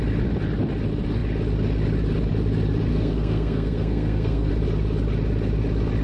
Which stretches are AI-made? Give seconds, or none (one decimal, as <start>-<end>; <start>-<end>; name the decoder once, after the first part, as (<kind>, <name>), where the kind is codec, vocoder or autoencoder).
2.9-4.5 (codec, SNAC)